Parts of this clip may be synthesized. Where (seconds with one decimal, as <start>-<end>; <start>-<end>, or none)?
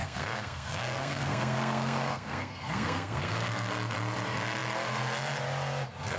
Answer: 0.0-3.7